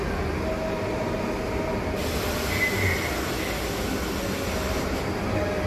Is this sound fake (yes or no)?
no